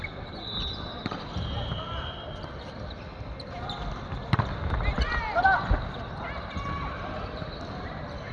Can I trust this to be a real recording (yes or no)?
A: yes